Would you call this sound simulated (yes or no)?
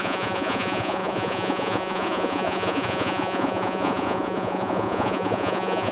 yes